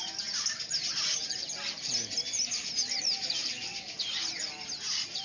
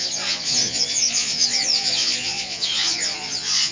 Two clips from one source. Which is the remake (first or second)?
second